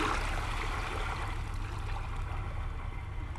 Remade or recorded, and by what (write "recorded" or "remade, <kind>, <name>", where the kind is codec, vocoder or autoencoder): recorded